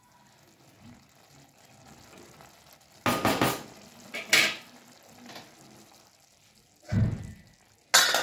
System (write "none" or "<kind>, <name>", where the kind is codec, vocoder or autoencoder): none